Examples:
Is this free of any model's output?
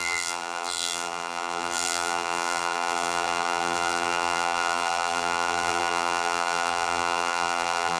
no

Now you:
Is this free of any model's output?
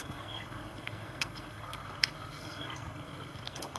no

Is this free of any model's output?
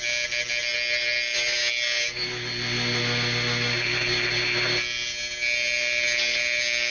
yes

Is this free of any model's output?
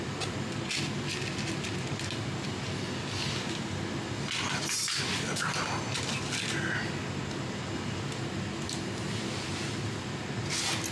yes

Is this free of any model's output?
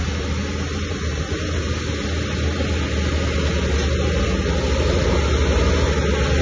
yes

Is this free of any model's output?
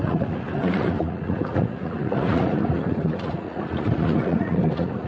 no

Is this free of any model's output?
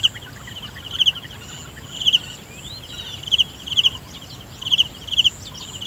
yes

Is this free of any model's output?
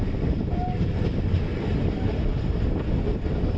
yes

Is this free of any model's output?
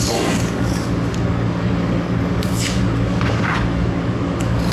no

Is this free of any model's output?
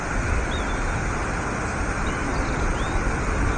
yes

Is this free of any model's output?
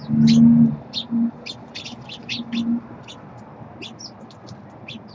yes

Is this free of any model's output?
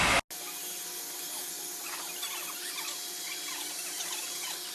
yes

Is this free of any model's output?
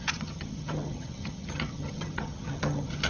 no